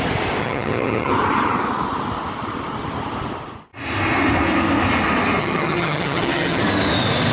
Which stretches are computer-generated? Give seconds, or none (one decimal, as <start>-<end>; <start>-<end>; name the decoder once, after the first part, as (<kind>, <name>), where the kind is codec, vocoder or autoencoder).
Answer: 0.4-1.1 (vocoder, HiFi-GAN); 5.4-6.6